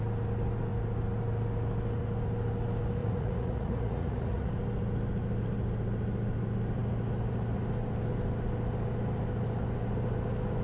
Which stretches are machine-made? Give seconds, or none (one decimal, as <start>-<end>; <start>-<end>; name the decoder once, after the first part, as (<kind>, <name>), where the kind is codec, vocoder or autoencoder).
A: 3.0-4.5 (vocoder, Vocos)